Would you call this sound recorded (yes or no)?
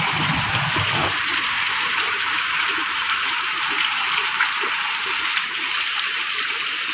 no